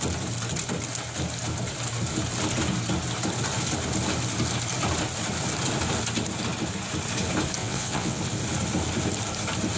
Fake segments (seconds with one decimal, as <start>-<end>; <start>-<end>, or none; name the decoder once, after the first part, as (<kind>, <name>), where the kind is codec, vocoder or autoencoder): 7.6-8.2 (vocoder, WaveNeXt)